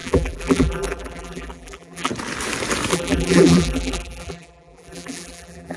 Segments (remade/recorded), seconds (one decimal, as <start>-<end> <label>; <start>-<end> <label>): 0.0-2.1 remade; 2.1-2.9 recorded; 2.9-5.8 remade